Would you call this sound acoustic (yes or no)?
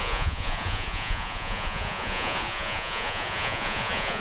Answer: no